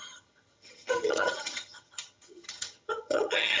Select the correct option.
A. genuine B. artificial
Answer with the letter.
B